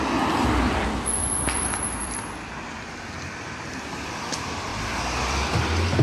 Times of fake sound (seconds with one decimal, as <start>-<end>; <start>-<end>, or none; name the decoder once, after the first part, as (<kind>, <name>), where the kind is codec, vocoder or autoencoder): 1.2-4.1 (vocoder, BigVGAN v2)

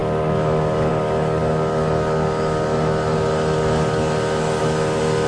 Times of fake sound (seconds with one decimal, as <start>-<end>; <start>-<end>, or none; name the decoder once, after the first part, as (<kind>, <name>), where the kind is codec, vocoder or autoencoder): 0.0-5.3 (codec, DAC)